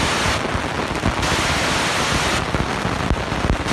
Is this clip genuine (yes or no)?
yes